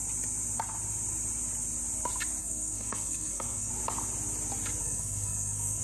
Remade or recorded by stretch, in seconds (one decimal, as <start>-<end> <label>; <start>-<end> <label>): 0.0-2.4 recorded; 2.4-3.7 remade; 3.7-4.8 recorded; 4.8-5.8 remade